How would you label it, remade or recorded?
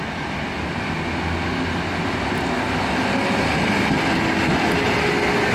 recorded